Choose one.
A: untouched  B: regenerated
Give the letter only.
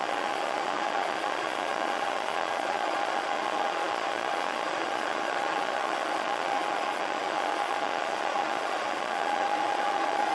B